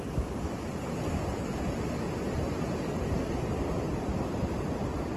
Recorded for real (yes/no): yes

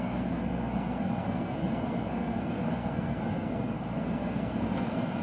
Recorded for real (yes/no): no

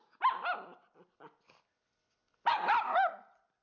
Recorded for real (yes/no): yes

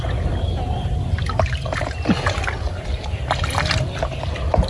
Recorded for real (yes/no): yes